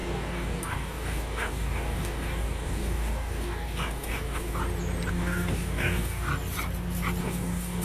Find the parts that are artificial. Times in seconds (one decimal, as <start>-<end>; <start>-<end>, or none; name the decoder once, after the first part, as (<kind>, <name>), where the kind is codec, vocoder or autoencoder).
0.0-4.6 (codec, DAC); 5.1-6.3; 7.2-7.8